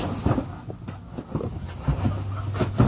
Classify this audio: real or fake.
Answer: real